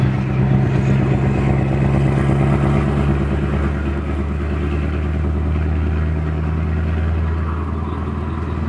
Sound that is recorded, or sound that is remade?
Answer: recorded